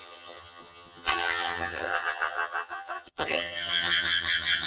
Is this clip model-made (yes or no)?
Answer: yes